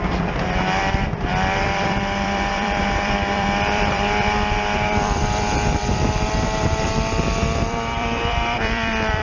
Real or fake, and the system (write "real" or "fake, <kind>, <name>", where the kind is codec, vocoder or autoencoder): fake, vocoder, BigVGAN v2